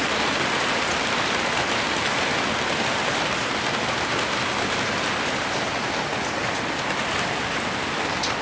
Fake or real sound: real